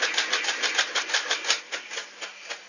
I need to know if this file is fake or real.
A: real